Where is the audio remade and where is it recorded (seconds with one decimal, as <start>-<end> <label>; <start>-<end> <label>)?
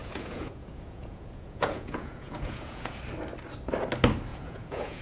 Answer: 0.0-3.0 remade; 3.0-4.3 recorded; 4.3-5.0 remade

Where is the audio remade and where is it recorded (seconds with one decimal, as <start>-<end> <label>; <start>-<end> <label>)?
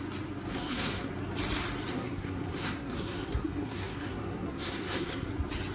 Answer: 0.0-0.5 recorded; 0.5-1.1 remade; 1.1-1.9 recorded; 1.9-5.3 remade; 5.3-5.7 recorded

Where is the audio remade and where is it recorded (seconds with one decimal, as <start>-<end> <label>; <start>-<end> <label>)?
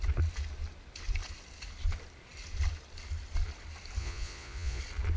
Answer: 0.0-4.0 recorded; 4.0-4.8 remade; 4.8-5.2 recorded